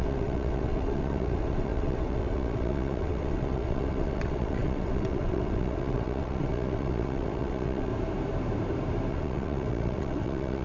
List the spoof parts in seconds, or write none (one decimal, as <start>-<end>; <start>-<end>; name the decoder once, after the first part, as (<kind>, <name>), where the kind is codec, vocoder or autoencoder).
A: 0.0-7.9 (vocoder, WaveNeXt); 9.1-10.6